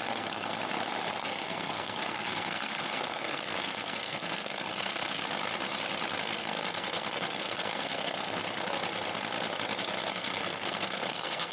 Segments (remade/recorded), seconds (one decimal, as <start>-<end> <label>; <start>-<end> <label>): 0.0-0.6 remade; 0.6-1.1 recorded; 1.1-5.2 remade; 5.2-6.4 recorded; 6.4-8.4 remade; 8.4-10.1 recorded; 10.1-11.5 remade